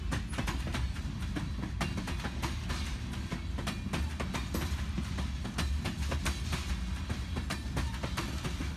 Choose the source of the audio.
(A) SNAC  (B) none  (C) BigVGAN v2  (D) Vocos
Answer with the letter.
B